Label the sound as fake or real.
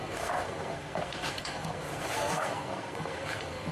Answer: fake